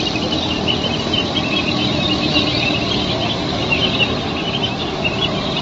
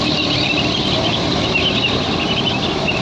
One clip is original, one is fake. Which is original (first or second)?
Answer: first